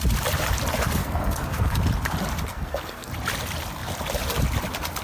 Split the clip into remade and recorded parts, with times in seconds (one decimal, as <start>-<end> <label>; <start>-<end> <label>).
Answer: 0.0-1.0 recorded; 1.0-1.8 remade; 1.8-2.5 recorded; 2.5-3.1 remade; 3.1-5.0 recorded